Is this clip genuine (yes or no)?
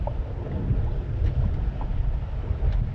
yes